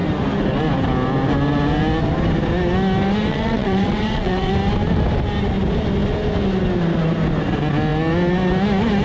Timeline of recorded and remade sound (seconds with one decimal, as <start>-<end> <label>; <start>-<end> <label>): 0.0-3.3 recorded; 3.3-4.5 remade; 4.5-9.0 recorded